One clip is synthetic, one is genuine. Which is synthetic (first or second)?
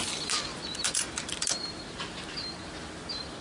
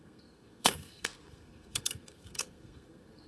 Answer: second